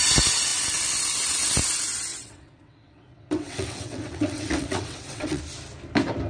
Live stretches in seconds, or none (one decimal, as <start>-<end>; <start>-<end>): 0.0-2.1; 5.4-6.3